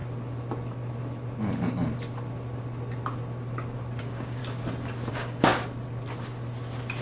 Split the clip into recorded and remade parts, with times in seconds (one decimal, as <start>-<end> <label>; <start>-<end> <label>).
0.0-4.0 recorded; 4.0-4.4 remade; 4.4-5.1 recorded; 5.1-5.5 remade; 5.5-7.0 recorded